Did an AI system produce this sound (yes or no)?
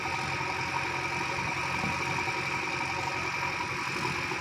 no